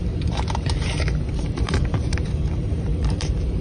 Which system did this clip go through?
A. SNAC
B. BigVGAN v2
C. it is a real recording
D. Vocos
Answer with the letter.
B